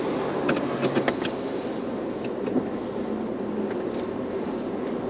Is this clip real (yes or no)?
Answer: yes